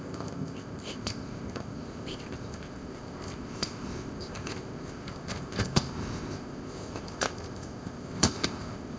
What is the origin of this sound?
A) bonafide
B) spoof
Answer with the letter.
B